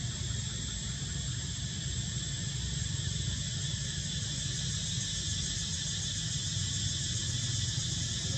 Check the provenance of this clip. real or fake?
real